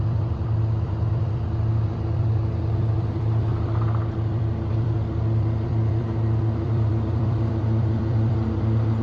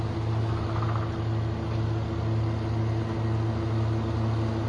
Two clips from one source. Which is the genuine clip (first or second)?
second